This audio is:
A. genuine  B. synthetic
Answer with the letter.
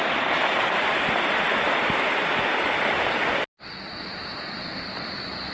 A